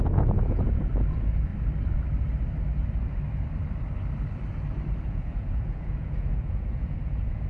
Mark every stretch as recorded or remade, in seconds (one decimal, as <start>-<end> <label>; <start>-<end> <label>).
0.0-1.5 remade; 1.5-5.0 recorded; 5.0-7.5 remade